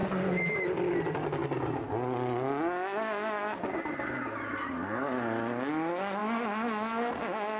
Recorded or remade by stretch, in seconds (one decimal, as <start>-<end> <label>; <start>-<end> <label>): 0.0-7.6 recorded